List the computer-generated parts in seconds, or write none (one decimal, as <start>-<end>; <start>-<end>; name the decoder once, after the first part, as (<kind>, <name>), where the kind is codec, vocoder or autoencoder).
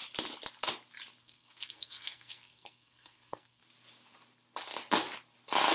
1.2-3.6 (codec, SNAC)